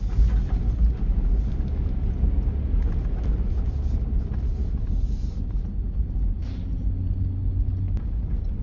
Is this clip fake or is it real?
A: real